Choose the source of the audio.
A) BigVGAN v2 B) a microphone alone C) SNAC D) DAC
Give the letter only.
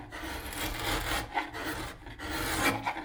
B